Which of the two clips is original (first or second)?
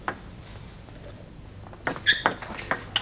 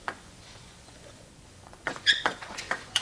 first